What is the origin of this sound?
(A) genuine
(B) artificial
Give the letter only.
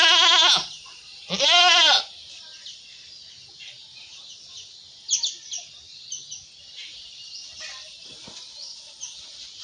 A